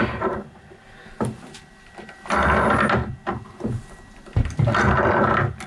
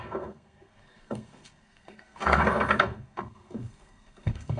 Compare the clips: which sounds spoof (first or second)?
second